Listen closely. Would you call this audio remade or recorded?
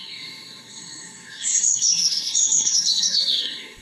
remade